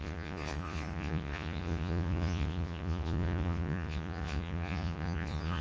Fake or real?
fake